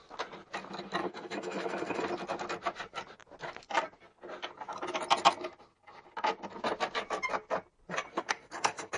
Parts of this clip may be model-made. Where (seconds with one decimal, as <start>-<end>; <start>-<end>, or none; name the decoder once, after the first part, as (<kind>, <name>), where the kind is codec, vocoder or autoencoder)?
1.0-2.0 (codec, SNAC); 8.1-9.0